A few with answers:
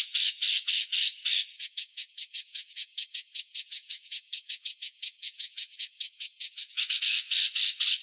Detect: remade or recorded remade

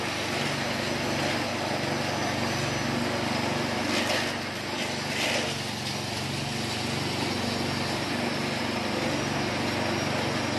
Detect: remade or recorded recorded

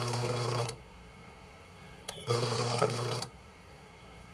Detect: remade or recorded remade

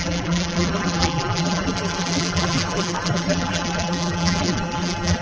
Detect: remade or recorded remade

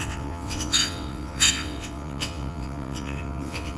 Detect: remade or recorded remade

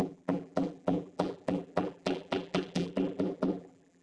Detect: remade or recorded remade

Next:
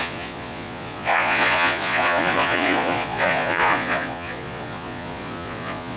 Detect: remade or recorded remade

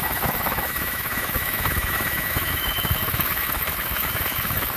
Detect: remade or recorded remade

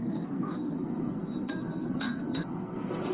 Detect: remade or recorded remade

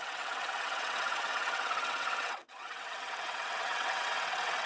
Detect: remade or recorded remade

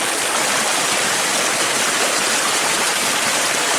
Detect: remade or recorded remade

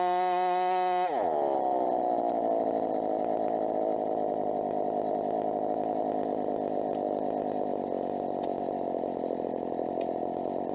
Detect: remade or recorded recorded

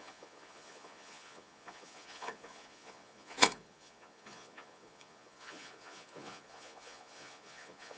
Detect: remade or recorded remade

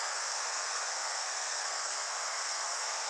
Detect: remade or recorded remade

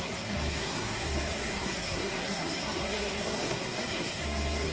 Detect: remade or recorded remade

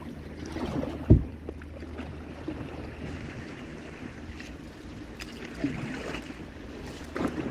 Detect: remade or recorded recorded